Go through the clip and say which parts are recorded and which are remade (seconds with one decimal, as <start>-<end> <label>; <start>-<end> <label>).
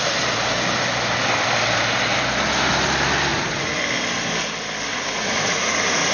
0.0-3.3 recorded; 3.3-3.8 remade; 3.8-4.9 recorded; 4.9-6.1 remade